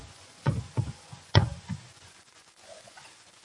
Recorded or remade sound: remade